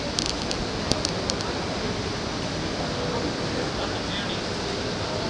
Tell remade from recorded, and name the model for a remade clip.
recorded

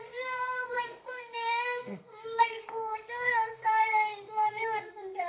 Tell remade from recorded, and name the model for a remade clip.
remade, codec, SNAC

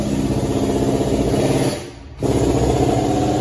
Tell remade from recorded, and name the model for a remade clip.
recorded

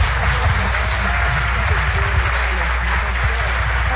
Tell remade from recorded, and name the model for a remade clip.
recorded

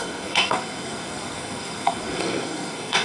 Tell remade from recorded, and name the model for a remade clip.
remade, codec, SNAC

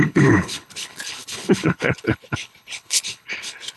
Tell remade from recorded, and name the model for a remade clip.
remade, codec, HILCodec